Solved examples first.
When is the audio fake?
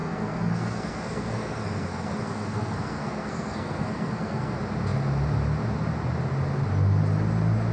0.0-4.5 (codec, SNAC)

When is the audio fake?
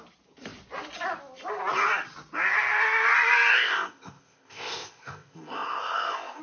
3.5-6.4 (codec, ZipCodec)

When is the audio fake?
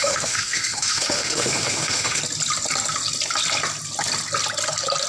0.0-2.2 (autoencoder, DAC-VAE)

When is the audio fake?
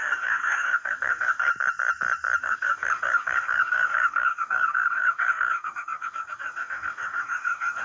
0.0-1.5 (codec, DAC); 2.4-7.8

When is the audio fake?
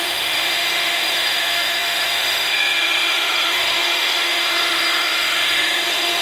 0.0-6.2 (autoencoder, DAC-VAE)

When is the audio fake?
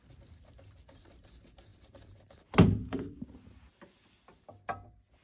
none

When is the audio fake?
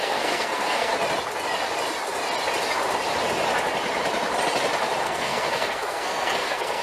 0.0-0.9 (codec, SNAC); 5.0-6.8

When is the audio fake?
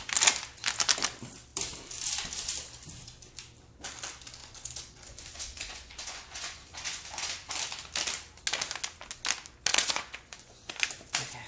4.4-7.5 (vocoder, Vocos); 9.7-10.7